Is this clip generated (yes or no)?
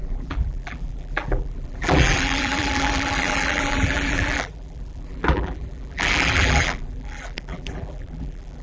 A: yes